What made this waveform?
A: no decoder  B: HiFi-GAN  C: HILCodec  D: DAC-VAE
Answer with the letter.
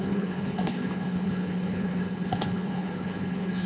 C